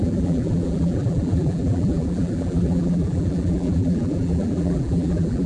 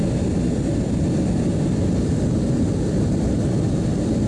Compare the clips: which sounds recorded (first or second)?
second